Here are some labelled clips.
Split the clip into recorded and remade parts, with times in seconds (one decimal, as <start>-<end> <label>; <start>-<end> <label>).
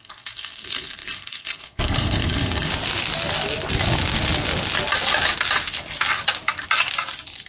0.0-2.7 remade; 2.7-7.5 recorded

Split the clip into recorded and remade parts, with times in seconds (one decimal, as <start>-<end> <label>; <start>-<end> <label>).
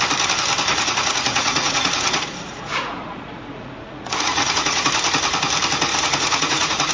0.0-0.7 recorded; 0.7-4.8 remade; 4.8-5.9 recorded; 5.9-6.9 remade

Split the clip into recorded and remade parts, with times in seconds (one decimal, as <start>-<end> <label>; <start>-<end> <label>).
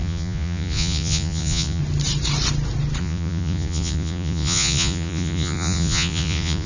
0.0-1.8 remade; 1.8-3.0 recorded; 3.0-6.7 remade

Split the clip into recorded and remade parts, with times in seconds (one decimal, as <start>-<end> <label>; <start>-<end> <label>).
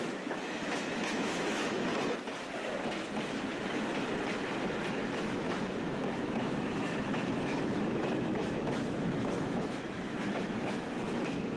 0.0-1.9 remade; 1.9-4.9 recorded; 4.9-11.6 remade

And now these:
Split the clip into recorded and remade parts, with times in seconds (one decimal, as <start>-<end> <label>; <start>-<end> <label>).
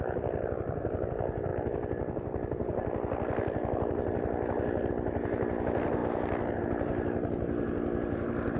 0.0-1.5 recorded; 1.5-4.9 remade; 4.9-8.6 recorded